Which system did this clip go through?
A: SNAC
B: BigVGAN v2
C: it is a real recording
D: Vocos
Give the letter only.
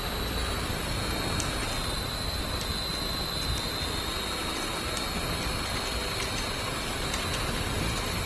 C